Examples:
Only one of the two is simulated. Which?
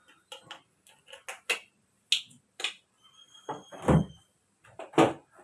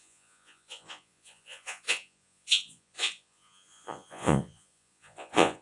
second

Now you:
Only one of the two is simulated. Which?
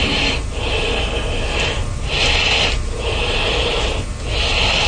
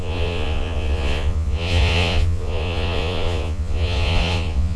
second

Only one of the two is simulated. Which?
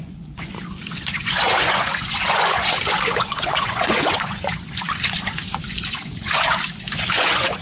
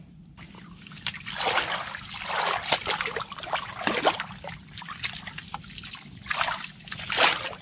first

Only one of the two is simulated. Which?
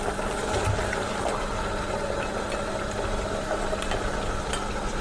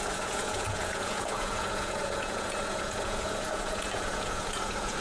second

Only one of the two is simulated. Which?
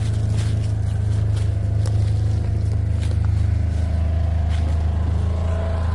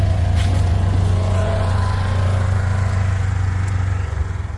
second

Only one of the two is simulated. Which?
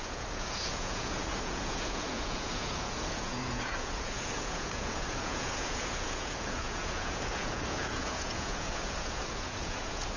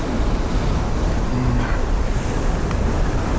first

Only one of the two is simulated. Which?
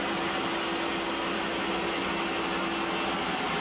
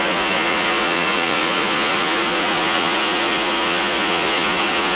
second